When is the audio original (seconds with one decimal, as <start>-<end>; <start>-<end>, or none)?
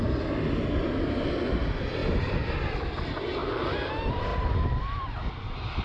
0.0-2.0; 2.5-3.4; 3.9-5.8